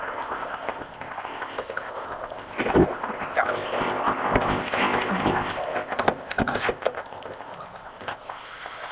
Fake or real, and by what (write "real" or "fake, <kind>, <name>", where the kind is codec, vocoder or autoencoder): fake, codec, ZipCodec